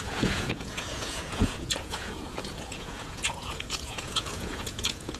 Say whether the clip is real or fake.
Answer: fake